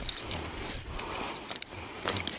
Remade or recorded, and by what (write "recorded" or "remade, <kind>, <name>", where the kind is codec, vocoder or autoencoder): recorded